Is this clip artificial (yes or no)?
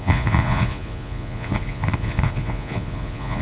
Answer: yes